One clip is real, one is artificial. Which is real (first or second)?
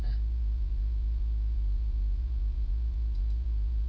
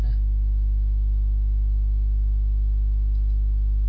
second